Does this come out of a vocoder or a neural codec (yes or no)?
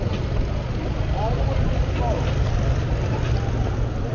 no